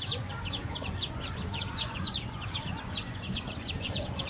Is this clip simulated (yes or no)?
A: yes